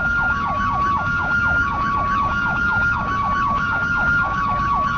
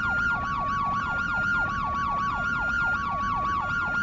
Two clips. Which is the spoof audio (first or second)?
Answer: first